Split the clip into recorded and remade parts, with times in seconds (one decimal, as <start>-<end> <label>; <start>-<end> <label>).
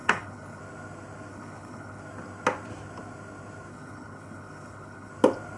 0.0-0.6 remade; 0.6-1.3 recorded; 1.3-2.0 remade; 2.0-3.7 recorded; 3.7-5.1 remade; 5.1-5.6 recorded